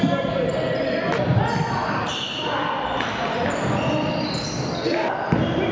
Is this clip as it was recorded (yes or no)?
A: yes